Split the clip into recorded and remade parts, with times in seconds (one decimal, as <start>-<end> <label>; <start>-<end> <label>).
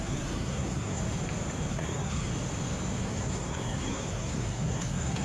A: 0.0-1.0 remade; 1.0-1.7 recorded; 1.7-2.3 remade; 2.3-3.0 recorded; 3.0-5.2 remade